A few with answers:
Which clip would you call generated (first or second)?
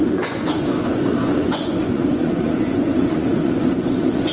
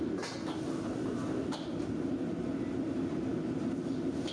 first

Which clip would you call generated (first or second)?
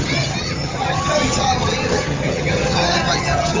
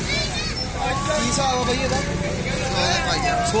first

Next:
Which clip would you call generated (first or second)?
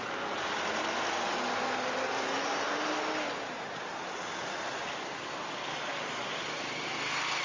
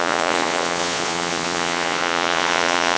second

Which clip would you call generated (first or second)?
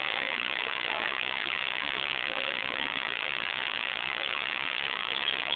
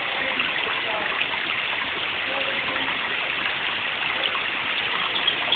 first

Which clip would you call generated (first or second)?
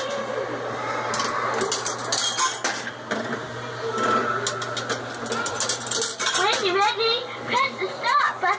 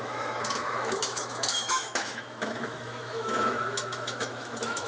second